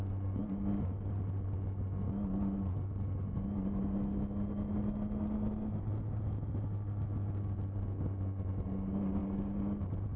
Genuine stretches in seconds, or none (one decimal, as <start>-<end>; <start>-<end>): 0.0-10.2